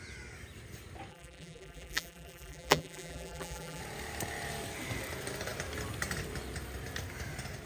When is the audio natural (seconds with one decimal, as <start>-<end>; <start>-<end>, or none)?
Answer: 0.0-1.1; 3.8-7.7

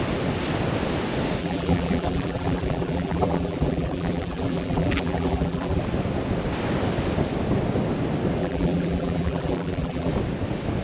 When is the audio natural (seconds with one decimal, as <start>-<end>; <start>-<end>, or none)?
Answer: 0.0-1.4; 5.8-8.4; 10.1-10.8

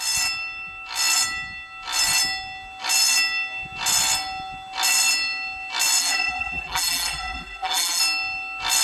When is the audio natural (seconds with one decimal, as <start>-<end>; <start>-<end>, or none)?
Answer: 0.0-6.0; 8.0-8.8

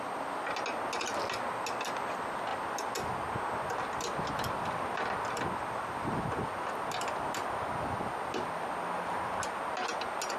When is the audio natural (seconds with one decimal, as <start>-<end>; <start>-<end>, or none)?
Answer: 0.0-10.4